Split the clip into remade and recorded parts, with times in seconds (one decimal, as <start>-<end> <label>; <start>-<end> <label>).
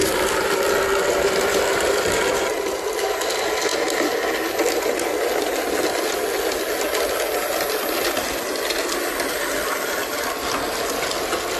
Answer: 0.0-11.6 recorded